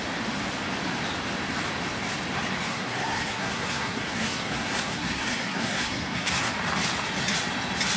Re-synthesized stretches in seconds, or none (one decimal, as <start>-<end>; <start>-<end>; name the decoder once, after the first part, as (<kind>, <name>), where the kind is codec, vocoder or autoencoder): 2.7-6.5 (codec, SNAC)